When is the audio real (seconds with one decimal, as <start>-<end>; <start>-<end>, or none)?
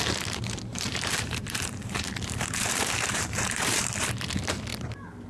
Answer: 0.0-0.7; 3.9-4.7